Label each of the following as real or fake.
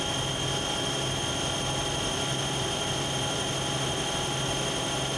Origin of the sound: real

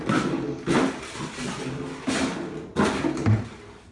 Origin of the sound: real